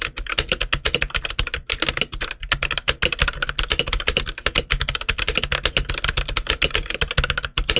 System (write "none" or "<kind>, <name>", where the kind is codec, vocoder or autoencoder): none